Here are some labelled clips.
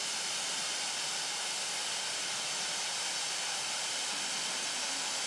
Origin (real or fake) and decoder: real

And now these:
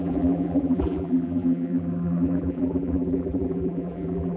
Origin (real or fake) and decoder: fake, vocoder, BigVGAN v2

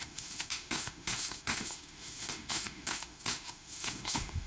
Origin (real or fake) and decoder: fake, autoencoder, DAC-VAE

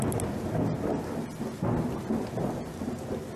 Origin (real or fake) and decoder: real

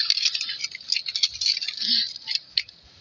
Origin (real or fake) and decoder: real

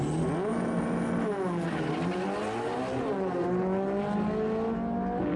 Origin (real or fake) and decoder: real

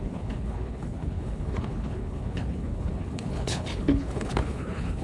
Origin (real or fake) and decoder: fake, codec, HILCodec